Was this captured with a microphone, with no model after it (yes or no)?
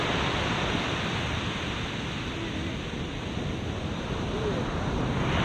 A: yes